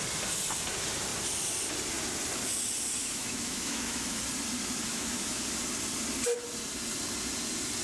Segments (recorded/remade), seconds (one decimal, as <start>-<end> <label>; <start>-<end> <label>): 0.0-3.0 recorded; 3.0-4.2 remade; 4.2-4.9 recorded; 4.9-5.4 remade; 5.4-7.8 recorded